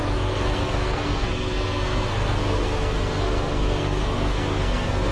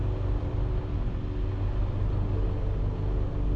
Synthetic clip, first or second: first